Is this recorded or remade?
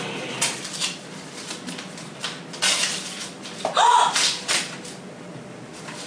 recorded